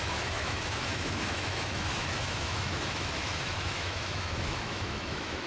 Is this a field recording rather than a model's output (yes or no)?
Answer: no